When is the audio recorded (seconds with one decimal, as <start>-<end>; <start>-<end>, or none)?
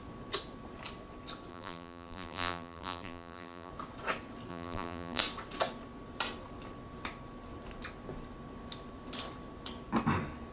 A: 0.0-1.5; 3.7-4.5; 5.2-10.5